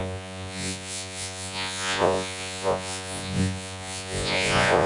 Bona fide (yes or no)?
no